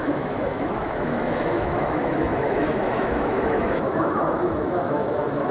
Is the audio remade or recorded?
remade